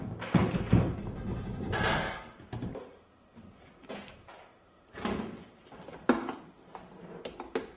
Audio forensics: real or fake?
real